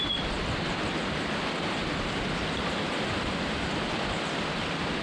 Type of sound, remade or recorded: recorded